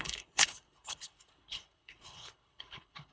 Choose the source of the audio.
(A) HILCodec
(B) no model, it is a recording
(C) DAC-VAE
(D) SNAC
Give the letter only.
A